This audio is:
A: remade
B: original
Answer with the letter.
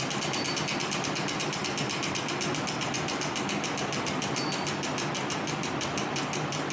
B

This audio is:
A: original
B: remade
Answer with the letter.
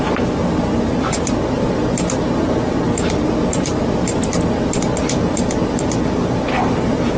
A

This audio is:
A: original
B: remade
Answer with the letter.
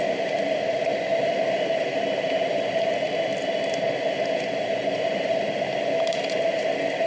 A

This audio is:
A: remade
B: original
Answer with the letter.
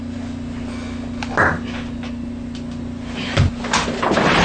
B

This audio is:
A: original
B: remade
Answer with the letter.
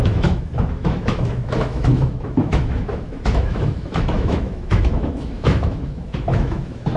B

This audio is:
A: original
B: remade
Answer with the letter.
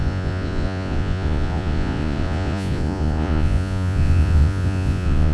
B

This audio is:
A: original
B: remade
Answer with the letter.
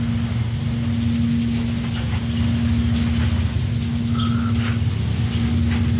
A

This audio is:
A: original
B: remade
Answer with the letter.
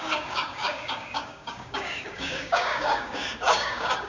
B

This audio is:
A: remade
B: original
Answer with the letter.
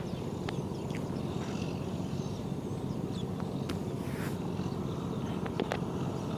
B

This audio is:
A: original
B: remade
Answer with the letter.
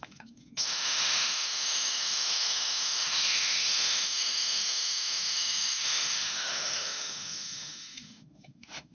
B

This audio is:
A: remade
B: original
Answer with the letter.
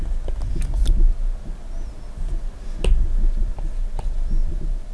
B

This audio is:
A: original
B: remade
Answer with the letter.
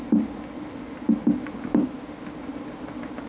A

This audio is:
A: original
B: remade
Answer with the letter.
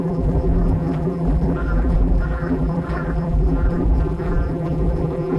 B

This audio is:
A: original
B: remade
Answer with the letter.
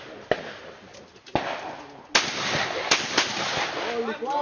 A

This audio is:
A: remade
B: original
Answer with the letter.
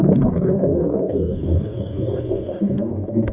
A